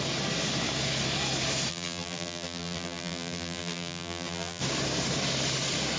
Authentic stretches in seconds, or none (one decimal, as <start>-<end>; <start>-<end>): 0.0-1.7; 4.6-6.0